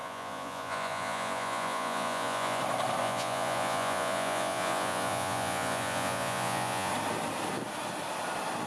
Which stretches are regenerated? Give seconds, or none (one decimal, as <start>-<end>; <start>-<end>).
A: 0.0-2.6; 3.0-6.9